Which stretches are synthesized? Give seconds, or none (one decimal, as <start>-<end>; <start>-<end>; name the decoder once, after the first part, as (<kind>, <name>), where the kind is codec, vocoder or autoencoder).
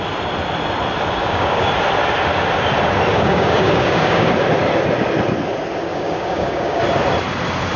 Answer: 1.2-1.7 (codec, DAC); 3.1-4.3; 5.9-6.8